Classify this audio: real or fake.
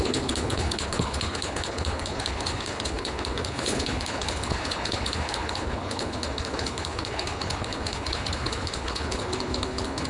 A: fake